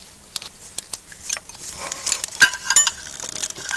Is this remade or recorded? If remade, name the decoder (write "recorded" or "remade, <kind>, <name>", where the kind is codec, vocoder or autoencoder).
recorded